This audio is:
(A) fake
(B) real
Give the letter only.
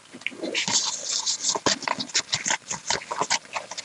B